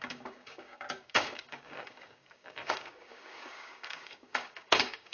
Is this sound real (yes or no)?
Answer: no